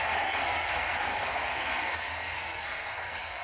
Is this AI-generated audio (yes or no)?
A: yes